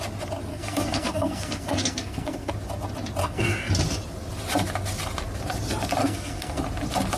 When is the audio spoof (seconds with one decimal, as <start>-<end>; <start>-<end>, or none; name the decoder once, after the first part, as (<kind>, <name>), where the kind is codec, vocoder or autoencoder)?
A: 0.5-2.5 (codec, SNAC); 3.2-3.7; 6.0-6.6